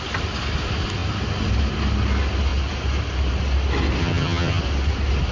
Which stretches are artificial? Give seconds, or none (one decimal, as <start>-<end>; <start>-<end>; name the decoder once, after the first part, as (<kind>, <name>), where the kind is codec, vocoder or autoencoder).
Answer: 4.0-4.6 (vocoder, HiFi-GAN)